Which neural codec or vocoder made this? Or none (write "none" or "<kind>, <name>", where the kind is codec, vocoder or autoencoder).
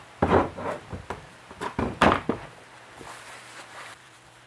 vocoder, BigVGAN v2